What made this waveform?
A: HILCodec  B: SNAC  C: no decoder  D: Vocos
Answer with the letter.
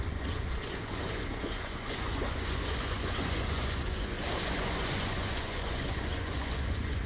D